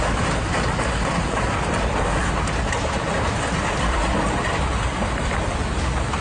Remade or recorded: recorded